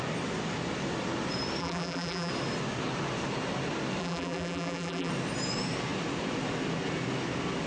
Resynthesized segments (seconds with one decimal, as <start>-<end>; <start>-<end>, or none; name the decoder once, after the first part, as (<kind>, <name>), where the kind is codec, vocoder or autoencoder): 1.6-2.3 (vocoder, BigVGAN v2); 4.0-5.1